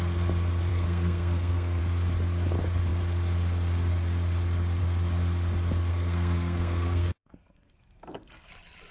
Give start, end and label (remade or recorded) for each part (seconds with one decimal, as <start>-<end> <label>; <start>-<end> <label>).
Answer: 0.0-0.7 recorded; 0.7-1.8 remade; 1.8-5.9 recorded; 5.9-8.5 remade; 8.5-8.9 recorded